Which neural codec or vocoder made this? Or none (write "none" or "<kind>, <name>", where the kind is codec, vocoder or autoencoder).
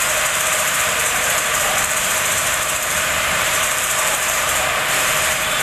vocoder, BigVGAN v2